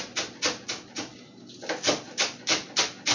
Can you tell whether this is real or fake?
real